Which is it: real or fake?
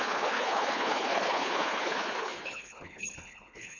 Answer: fake